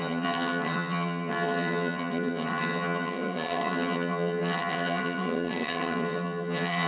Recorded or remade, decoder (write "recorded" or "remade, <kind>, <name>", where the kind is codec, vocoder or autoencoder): remade, vocoder, HiFi-GAN